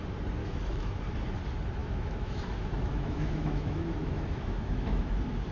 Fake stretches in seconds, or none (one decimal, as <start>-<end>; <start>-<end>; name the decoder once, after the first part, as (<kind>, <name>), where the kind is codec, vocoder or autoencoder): 0.4-1.0 (autoencoder, DAC-VAE); 1.8-5.1